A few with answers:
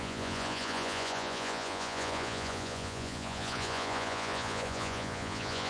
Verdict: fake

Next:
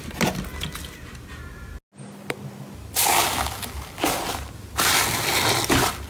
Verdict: real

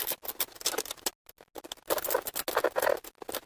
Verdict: real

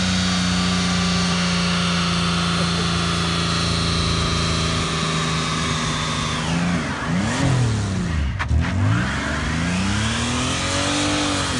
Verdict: real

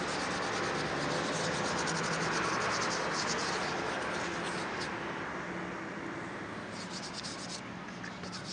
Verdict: real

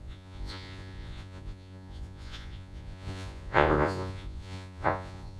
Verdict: fake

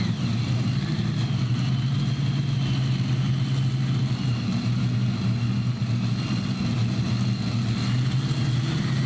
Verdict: real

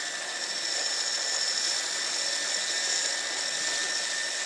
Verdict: real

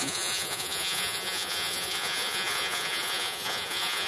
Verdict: fake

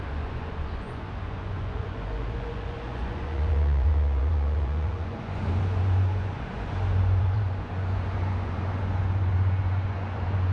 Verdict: fake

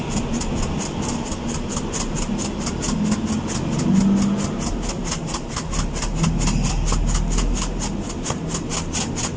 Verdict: real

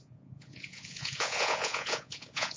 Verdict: fake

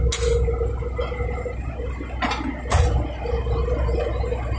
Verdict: real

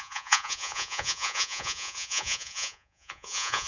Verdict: fake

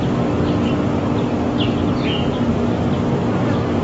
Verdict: real